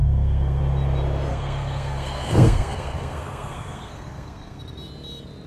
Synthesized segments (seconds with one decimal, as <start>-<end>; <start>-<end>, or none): 0.0-0.6; 1.3-4.6